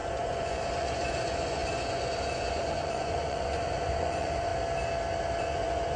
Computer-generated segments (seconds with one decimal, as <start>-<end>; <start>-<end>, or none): 0.0-4.5; 5.4-6.0